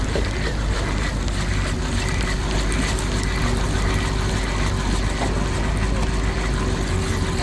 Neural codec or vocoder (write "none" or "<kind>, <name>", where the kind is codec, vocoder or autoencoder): none